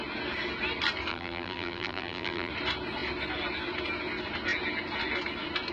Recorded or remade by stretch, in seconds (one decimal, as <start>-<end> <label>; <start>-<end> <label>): 0.0-1.1 recorded; 1.1-2.5 remade; 2.5-5.7 recorded